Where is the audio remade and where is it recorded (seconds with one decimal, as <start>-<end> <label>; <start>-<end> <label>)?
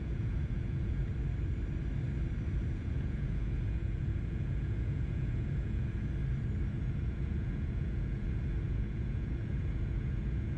0.0-1.0 remade; 1.0-2.7 recorded; 2.7-6.2 remade; 6.2-6.7 recorded; 6.7-10.6 remade